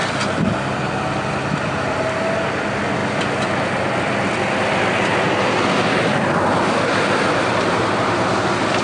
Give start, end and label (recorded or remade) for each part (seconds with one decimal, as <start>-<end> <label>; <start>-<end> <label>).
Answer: 0.0-8.8 recorded